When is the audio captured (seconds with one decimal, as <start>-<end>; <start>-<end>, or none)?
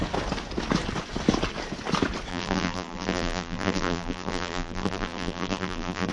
0.0-2.3